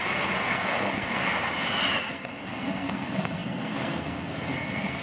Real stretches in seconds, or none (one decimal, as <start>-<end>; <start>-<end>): 1.4-2.1